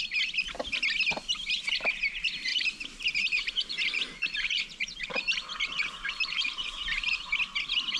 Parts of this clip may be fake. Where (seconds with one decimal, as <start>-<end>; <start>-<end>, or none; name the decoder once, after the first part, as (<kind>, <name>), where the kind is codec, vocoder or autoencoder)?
2.5-7.3 (vocoder, BigVGAN v2)